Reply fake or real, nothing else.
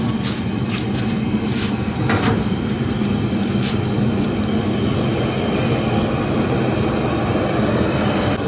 real